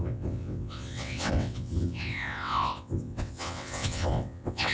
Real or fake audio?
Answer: fake